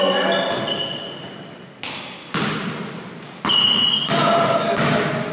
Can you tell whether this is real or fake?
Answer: real